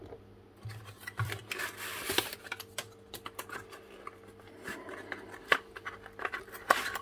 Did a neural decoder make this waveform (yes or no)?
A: no